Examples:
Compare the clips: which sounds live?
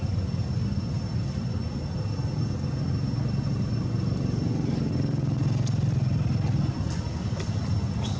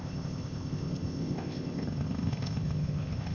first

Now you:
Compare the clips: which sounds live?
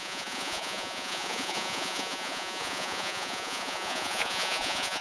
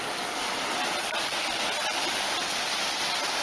second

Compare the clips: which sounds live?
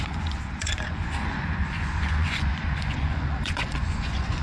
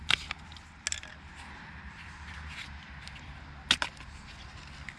second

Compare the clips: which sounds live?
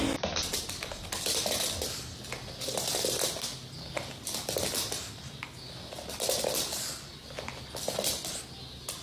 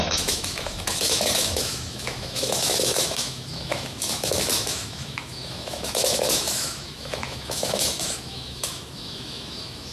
first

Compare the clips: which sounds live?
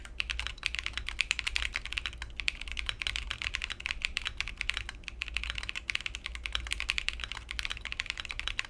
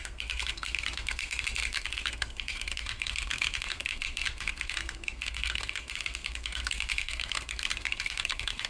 first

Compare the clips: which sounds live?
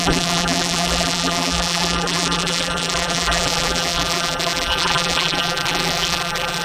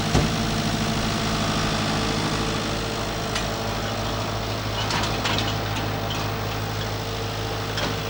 second